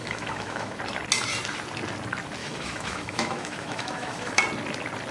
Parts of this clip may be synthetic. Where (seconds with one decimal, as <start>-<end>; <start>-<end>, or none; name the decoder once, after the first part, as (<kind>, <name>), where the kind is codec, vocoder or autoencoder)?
0.0-0.8 (autoencoder, DAC-VAE); 2.4-4.4